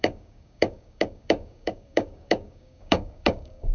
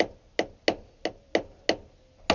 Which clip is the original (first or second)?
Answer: second